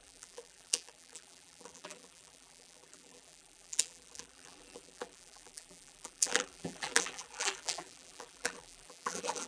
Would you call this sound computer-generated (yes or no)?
yes